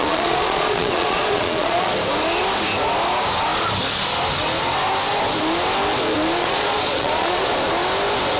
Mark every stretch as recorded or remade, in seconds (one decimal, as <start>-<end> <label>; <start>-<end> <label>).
0.0-1.9 remade; 1.9-6.4 recorded; 6.4-7.5 remade; 7.5-8.4 recorded